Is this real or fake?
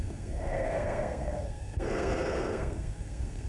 fake